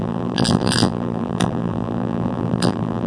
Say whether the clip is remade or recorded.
remade